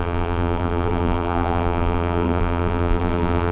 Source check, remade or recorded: remade